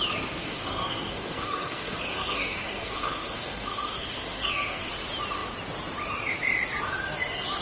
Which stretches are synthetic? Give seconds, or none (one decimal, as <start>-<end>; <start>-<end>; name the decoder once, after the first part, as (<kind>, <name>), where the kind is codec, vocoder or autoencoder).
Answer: 0.4-4.9 (codec, SNAC)